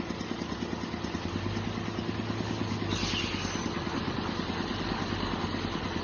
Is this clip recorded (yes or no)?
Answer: yes